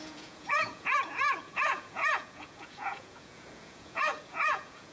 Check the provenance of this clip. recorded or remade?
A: remade